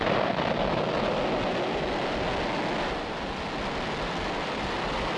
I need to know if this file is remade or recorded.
recorded